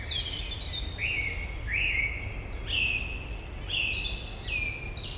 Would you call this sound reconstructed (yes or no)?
no